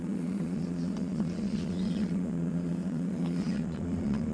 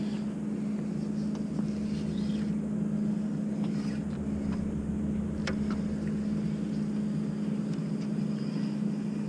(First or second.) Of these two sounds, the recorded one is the second